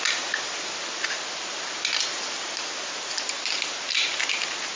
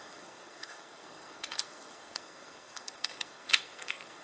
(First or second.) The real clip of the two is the first